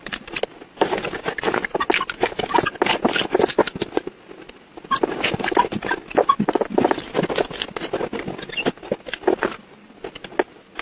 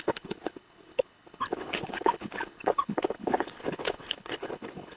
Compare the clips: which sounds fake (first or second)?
second